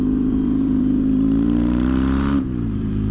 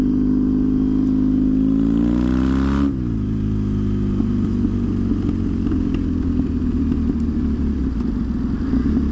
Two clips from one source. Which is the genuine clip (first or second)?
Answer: second